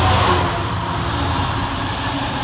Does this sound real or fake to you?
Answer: real